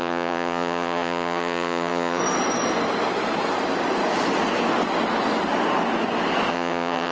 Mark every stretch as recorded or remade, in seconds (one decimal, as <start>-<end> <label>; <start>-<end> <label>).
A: 0.0-2.2 remade; 2.2-6.5 recorded; 6.5-7.1 remade